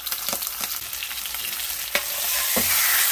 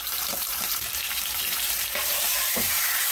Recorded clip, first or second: first